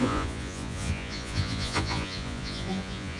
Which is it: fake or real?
fake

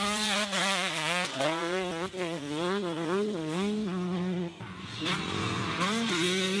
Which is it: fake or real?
fake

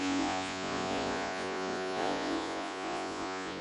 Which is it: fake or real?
fake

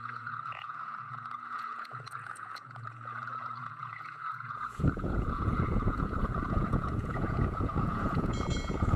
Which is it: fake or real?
fake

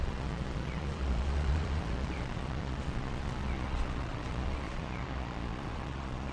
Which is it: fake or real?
fake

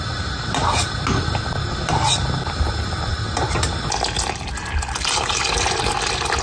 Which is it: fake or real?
real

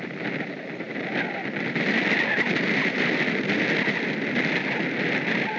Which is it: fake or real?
real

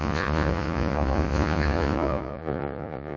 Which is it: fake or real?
fake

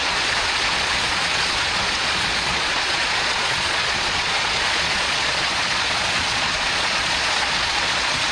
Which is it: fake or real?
fake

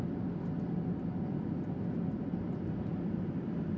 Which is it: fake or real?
real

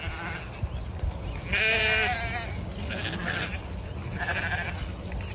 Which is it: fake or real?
real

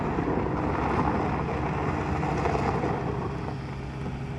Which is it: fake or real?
real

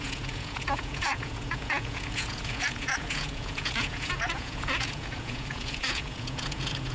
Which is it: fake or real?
fake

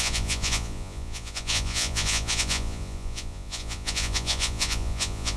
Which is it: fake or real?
fake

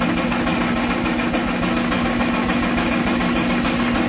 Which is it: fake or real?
real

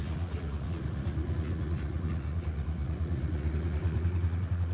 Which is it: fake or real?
fake